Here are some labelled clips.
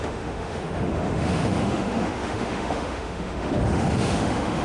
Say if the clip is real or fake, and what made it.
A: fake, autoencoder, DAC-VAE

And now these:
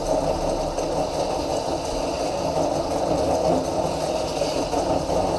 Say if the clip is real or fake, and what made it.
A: real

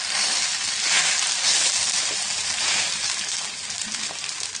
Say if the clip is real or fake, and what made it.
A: real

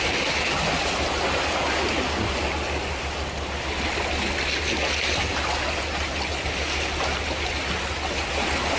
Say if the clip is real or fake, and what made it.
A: real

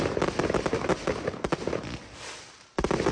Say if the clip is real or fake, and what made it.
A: real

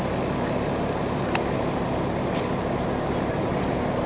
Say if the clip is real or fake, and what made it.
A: real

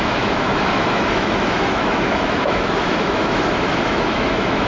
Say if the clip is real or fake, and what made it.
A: fake, autoencoder, DAC-VAE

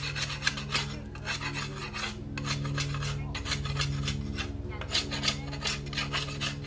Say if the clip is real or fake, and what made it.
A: real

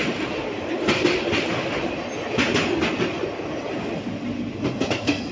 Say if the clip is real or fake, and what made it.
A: real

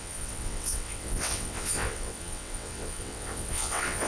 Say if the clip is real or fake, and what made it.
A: fake, vocoder, WaveNeXt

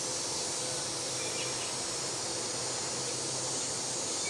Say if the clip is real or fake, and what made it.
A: real